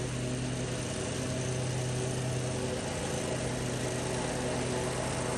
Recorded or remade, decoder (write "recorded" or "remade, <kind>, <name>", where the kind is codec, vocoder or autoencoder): recorded